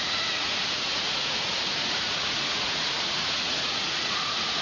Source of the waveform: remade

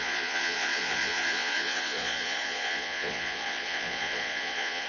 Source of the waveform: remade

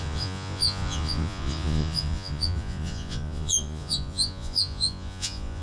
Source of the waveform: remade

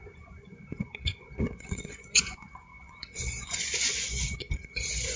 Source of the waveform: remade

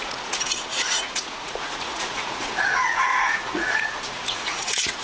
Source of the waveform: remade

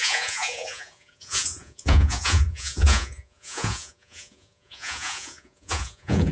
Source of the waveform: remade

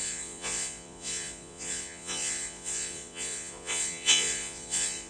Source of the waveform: remade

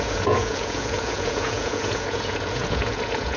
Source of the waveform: remade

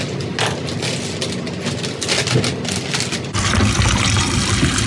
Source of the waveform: recorded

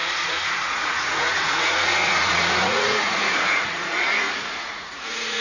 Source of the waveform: remade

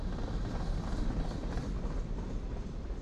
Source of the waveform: recorded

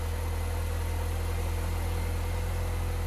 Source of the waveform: recorded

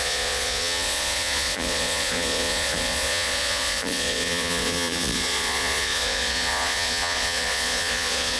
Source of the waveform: remade